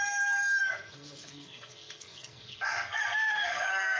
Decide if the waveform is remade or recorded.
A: remade